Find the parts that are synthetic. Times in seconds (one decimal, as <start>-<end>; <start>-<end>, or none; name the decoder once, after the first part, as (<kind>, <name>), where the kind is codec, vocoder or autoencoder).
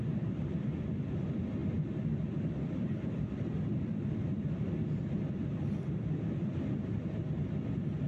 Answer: none